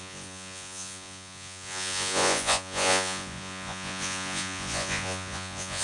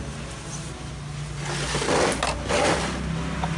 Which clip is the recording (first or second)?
second